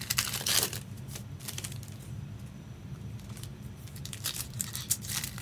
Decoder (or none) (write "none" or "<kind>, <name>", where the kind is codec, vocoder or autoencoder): vocoder, BigVGAN v2